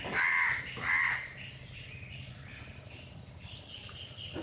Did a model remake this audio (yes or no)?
no